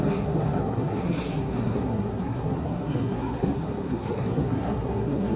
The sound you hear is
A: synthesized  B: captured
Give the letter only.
A